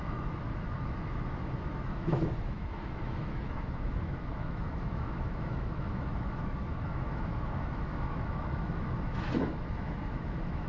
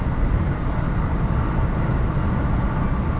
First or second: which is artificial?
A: first